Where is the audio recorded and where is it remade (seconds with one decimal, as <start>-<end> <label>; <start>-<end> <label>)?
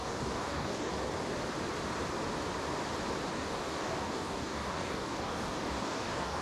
0.0-0.9 remade; 0.9-3.3 recorded; 3.3-6.4 remade